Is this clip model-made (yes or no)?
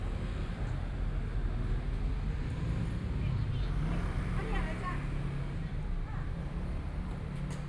no